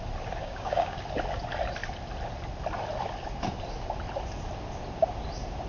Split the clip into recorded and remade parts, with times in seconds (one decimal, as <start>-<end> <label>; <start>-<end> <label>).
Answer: 0.0-0.4 recorded; 0.4-1.0 remade; 1.0-5.7 recorded